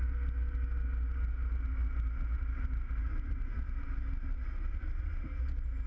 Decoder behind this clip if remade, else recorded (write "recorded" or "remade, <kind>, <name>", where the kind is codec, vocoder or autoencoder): recorded